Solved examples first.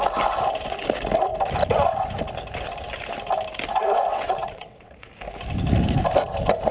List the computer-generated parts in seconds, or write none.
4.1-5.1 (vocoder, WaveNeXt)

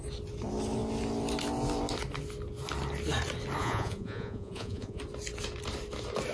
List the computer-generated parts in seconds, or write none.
3.6-5.0 (vocoder, Vocos)

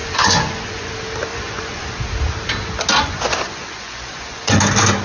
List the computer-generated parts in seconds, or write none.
0.0-0.9 (vocoder, Vocos); 1.3-1.9; 3.0-4.6

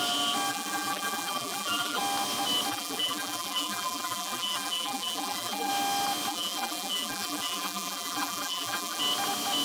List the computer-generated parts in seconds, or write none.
0.5-2.0 (vocoder, BigVGAN v2); 2.7-5.7; 6.3-9.0